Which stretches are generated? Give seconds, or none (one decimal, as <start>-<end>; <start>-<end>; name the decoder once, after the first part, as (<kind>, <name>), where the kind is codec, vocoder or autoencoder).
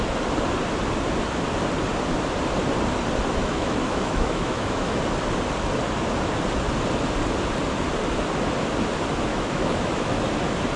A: 3.4-5.0 (autoencoder, DAC-VAE); 9.3-10.1